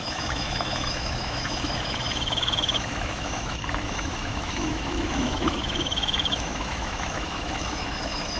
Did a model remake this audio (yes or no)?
yes